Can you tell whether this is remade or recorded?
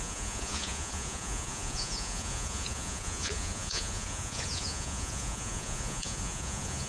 remade